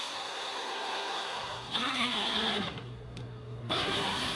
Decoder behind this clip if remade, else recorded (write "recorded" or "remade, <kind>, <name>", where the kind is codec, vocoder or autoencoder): remade, codec, SNAC